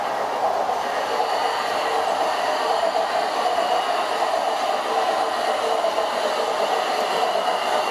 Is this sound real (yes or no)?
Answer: yes